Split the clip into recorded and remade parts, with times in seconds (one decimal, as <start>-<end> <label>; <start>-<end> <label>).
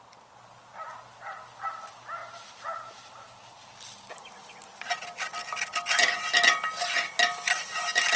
0.0-8.2 recorded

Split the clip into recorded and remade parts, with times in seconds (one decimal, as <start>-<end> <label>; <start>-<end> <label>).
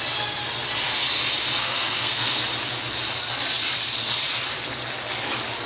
0.0-1.6 recorded; 1.6-2.5 remade; 2.5-5.7 recorded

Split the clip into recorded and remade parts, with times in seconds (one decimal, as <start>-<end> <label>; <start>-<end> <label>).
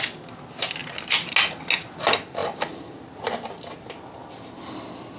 0.0-5.2 recorded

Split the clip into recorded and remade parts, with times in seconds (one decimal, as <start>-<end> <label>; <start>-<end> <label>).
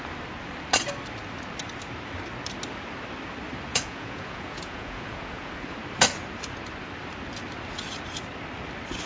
0.0-3.7 recorded; 3.7-5.5 remade; 5.5-9.1 recorded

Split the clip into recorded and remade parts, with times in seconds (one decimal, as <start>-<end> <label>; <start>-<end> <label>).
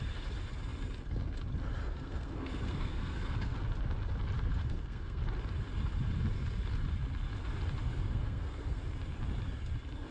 0.0-1.8 recorded; 1.8-3.6 remade; 3.6-4.5 recorded; 4.5-5.2 remade; 5.2-7.9 recorded; 7.9-8.8 remade; 8.8-10.1 recorded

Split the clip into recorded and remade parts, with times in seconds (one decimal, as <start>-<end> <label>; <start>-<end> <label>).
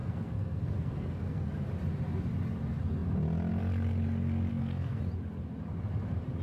0.0-1.4 remade; 1.4-4.5 recorded; 4.5-5.0 remade; 5.0-6.4 recorded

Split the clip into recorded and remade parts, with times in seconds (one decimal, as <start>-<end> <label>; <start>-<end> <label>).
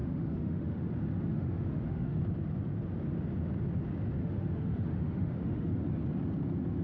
0.0-0.9 remade; 0.9-1.3 recorded; 1.3-2.2 remade; 2.2-4.2 recorded; 4.2-5.7 remade; 5.7-6.8 recorded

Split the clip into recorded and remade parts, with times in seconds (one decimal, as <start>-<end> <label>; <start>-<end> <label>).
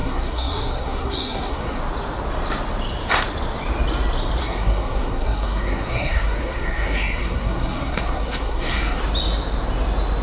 0.0-1.8 remade; 1.8-4.4 recorded; 4.4-9.0 remade; 9.0-10.2 recorded